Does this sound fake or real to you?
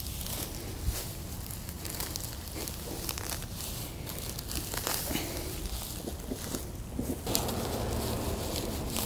real